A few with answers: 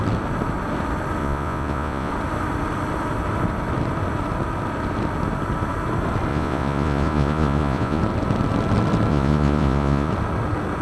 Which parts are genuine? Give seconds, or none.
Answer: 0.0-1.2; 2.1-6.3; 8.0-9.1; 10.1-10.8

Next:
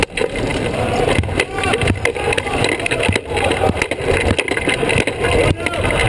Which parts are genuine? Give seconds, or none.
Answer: 0.0-6.1